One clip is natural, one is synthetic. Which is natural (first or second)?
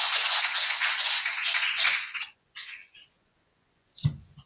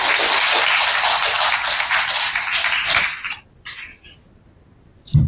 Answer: second